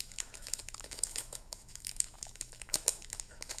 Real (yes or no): no